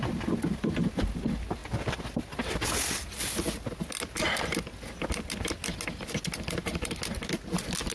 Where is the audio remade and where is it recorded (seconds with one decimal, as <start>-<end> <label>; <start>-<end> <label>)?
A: 0.0-7.9 recorded